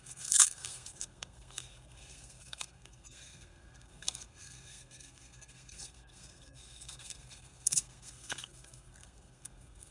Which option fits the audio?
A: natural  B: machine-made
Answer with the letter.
B